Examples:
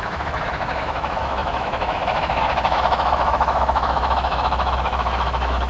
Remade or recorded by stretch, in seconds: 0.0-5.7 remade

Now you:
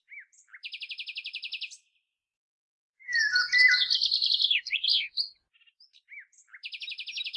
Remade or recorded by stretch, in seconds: 0.0-7.4 recorded

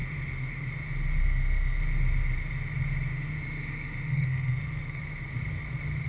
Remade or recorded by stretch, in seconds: 0.0-0.7 remade; 0.7-1.2 recorded; 1.2-1.8 remade; 1.8-3.1 recorded; 3.1-5.0 remade; 5.0-6.1 recorded

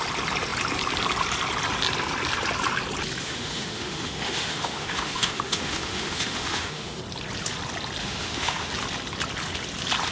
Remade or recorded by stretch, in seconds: 0.0-3.2 recorded; 3.2-7.0 remade; 7.0-8.0 recorded; 8.0-8.7 remade; 8.7-10.1 recorded